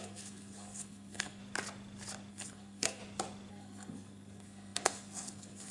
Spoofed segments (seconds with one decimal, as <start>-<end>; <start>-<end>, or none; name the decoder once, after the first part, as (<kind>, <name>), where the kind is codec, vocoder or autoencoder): 0.0-1.4 (codec, SNAC); 2.3-3.0; 3.5-5.7